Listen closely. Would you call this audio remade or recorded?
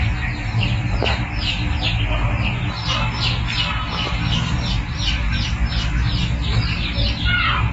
recorded